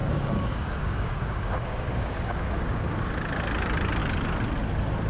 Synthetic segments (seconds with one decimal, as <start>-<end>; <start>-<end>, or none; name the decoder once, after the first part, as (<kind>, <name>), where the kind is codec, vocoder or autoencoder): 0.0-3.1 (codec, DAC)